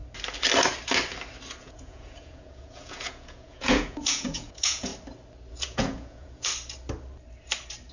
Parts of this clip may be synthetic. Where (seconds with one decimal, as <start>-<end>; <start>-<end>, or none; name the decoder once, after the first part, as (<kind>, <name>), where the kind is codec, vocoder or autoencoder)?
1.6-4.9 (vocoder, Vocos); 5.5-6.5